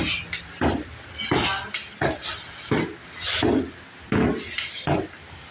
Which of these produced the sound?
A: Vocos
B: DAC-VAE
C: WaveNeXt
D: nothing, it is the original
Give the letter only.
D